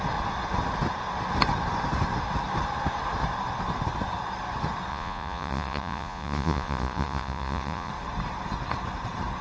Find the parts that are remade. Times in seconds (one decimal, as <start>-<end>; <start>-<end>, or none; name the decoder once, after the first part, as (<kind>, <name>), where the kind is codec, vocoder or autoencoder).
4.9-7.9 (vocoder, Vocos)